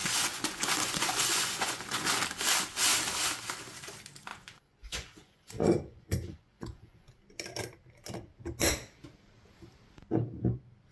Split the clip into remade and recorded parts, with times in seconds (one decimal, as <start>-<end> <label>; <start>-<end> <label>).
0.0-2.2 remade; 2.2-4.3 recorded; 4.3-7.1 remade; 7.1-10.9 recorded